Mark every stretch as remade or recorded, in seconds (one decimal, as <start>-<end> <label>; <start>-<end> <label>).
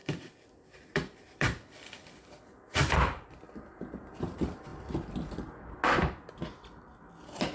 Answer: 0.0-4.2 remade; 4.2-4.7 recorded; 4.7-5.6 remade; 5.6-7.5 recorded